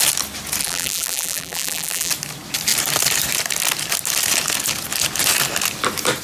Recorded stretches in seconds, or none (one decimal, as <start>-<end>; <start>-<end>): 0.0-0.6; 2.1-6.2